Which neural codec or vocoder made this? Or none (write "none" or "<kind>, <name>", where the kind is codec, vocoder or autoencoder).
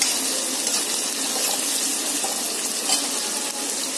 none